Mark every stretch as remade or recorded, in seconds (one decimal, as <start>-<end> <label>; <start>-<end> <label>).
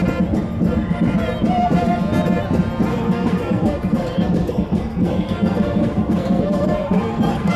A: 0.0-2.9 recorded; 2.9-7.6 remade